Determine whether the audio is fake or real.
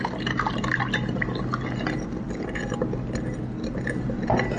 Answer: real